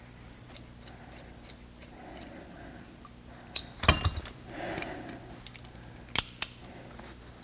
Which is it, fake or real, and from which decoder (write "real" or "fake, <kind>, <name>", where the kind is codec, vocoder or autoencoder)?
real